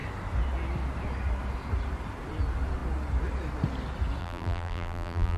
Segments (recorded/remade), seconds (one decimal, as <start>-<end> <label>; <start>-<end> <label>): 0.0-4.2 recorded; 4.2-5.4 remade